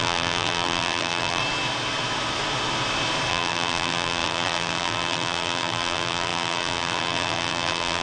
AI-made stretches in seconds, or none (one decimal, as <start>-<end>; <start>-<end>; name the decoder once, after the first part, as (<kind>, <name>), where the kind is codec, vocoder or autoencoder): 0.0-1.4 (vocoder, BigVGAN v2); 3.3-8.0

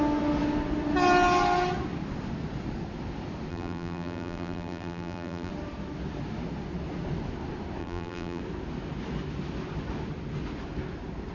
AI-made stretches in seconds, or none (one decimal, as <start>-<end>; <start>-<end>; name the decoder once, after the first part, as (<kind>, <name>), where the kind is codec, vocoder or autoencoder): 3.5-5.5 (vocoder, BigVGAN v2); 7.8-8.4

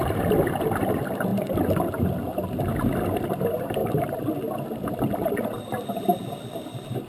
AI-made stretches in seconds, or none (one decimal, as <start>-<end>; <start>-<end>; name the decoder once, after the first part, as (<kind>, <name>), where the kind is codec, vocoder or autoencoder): 1.3-1.9 (vocoder, BigVGAN v2); 3.8-4.3

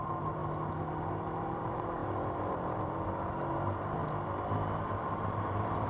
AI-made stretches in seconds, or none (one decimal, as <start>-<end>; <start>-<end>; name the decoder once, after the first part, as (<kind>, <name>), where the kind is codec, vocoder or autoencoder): 0.0-0.4 (vocoder, BigVGAN v2); 1.4-4.0; 4.9-5.9

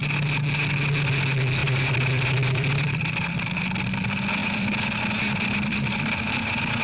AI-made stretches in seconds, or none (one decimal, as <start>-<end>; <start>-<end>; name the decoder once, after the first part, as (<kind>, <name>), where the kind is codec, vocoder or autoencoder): 1.6-3.6 (vocoder, BigVGAN v2); 4.4-6.8